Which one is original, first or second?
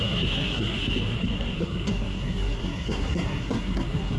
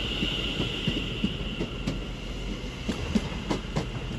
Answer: second